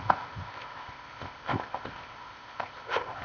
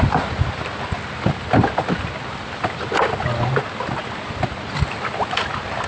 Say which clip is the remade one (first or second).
first